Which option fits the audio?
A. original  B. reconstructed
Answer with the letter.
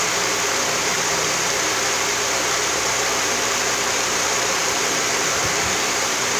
B